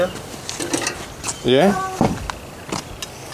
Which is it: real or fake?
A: real